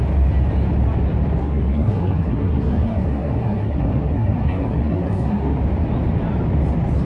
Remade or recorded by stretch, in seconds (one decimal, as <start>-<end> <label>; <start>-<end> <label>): 0.0-1.4 recorded; 1.4-5.6 remade; 5.6-7.0 recorded